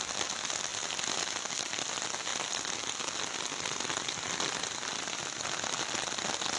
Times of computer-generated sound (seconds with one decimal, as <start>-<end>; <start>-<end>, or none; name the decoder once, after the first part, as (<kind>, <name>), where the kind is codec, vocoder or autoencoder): none